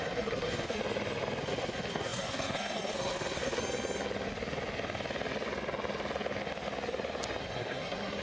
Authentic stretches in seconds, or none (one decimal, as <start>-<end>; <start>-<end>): 0.8-1.4; 3.6-7.4